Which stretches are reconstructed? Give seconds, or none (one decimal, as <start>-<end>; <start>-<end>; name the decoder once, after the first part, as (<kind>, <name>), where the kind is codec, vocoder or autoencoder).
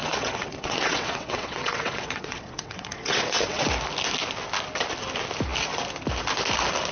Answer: 0.0-3.6 (vocoder, WaveNeXt)